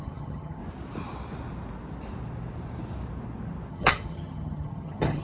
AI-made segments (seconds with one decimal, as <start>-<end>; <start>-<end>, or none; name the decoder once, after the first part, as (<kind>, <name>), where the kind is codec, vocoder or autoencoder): 0.0-0.6 (vocoder, HiFi-GAN); 3.7-5.2